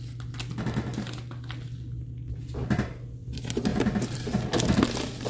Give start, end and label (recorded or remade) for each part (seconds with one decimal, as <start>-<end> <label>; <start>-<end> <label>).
0.0-5.3 recorded